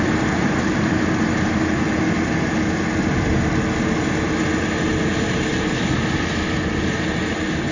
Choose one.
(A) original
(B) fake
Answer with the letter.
A